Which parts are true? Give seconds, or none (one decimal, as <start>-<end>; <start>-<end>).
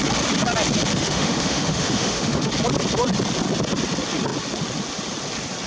0.0-0.9; 2.5-5.7